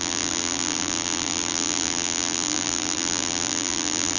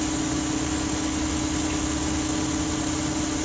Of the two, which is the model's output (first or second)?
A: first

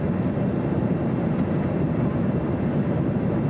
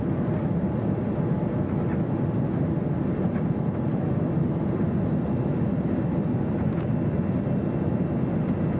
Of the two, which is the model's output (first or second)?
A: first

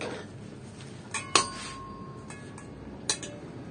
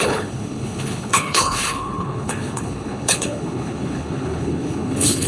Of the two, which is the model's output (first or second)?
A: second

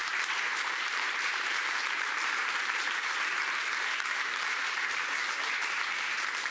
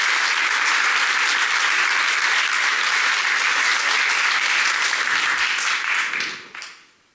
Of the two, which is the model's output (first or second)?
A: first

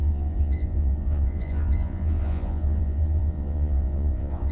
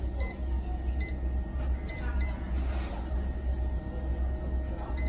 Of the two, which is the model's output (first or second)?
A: first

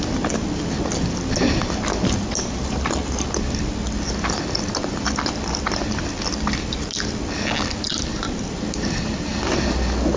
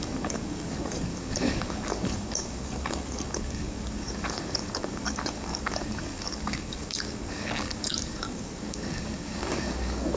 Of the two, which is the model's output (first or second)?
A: second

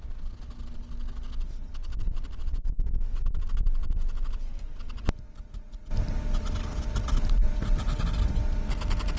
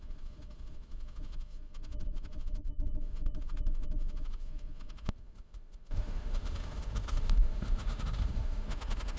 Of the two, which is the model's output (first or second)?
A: second